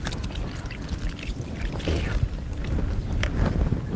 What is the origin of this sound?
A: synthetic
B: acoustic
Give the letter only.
B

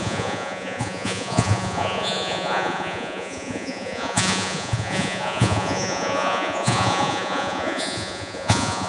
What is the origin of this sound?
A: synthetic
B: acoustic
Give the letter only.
A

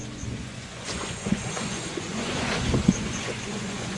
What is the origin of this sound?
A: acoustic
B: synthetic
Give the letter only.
B